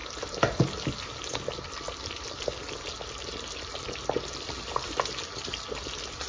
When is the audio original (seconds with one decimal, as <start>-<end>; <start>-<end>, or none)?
0.0-6.3